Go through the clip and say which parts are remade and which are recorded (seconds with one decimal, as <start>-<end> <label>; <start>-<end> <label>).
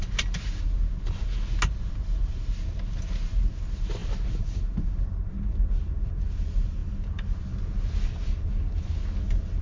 0.0-9.6 recorded